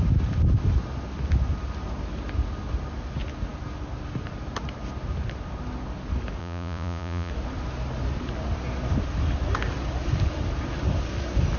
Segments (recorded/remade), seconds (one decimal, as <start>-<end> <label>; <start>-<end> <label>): 0.0-6.4 recorded; 6.4-7.3 remade; 7.3-11.6 recorded